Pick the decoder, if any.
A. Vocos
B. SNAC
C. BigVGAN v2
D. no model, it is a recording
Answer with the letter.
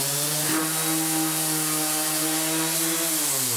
D